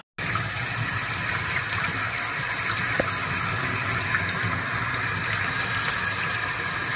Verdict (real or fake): real